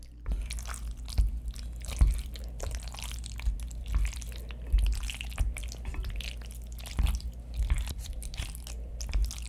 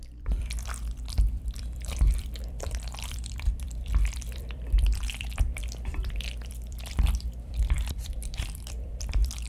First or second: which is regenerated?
second